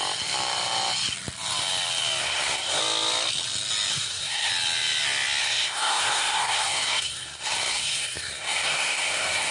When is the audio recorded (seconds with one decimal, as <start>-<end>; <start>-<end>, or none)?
0.0-2.2; 2.8-3.9; 4.5-5.4